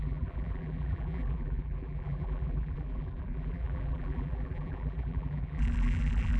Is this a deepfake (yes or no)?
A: yes